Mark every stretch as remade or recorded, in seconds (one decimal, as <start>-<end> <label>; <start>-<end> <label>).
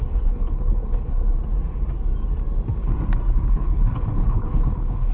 0.0-1.2 remade; 1.2-3.5 recorded; 3.5-5.1 remade